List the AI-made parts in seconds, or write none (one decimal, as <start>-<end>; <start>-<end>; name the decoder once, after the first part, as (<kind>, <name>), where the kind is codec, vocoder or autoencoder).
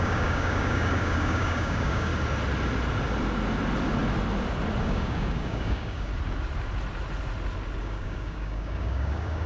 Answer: 0.0-2.1 (codec, DAC); 4.8-6.1; 7.8-9.5